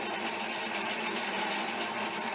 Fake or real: real